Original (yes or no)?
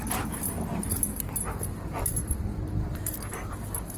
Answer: yes